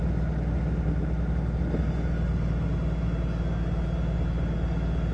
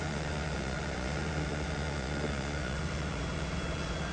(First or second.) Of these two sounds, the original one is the first